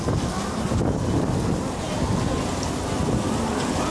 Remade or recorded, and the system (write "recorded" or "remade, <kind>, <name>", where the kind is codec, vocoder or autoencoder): recorded